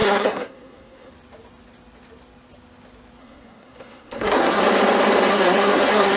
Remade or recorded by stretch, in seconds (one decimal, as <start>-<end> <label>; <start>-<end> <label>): 0.0-1.1 remade; 1.1-3.2 recorded; 3.2-4.6 remade; 4.6-5.3 recorded; 5.3-6.2 remade